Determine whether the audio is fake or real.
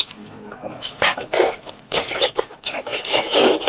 fake